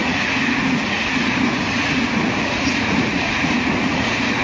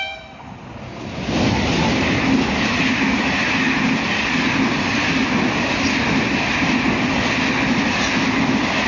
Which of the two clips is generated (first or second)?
first